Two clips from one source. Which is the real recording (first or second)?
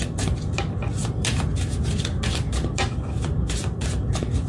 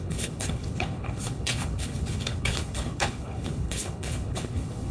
first